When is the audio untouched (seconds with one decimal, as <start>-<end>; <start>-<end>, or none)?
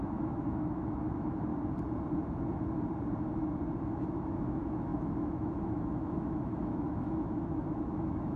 1.5-3.8